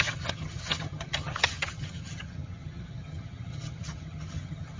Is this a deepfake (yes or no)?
yes